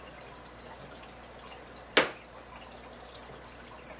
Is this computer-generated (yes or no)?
no